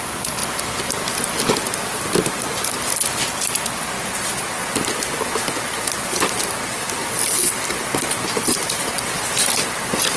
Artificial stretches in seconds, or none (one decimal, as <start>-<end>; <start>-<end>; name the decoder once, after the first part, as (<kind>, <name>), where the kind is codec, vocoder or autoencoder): none